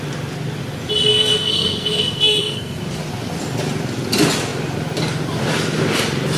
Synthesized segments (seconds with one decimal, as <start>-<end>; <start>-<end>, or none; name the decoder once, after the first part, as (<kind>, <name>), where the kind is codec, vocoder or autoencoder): 1.1-2.8 (codec, SNAC)